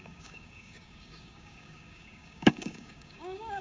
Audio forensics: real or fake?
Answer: fake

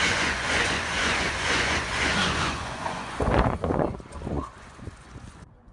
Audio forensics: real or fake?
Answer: fake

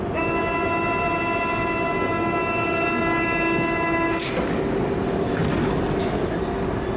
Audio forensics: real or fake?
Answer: real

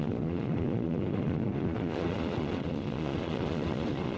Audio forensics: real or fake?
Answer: fake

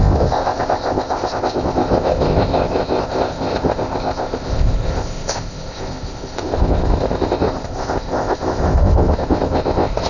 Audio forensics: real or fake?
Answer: fake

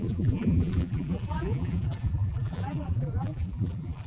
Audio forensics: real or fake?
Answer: fake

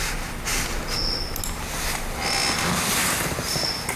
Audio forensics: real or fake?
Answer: real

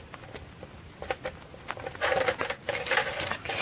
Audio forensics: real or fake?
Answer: real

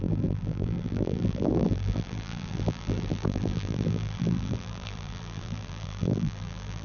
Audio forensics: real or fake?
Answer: fake